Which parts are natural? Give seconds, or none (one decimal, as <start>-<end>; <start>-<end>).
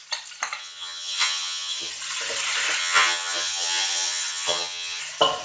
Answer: 0.0-0.6; 1.9-2.8; 5.0-5.4